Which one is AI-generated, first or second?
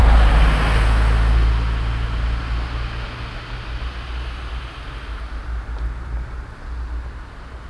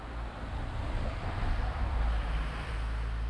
second